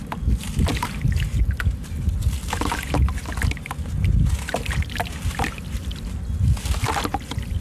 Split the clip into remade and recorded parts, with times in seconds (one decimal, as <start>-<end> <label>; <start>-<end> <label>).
0.0-7.6 recorded